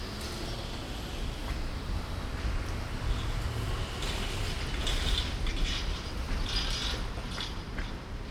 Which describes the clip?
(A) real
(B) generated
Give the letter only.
A